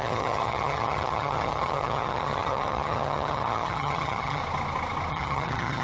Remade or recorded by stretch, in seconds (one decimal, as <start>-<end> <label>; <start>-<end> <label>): 0.0-4.4 remade; 4.4-5.1 recorded; 5.1-5.8 remade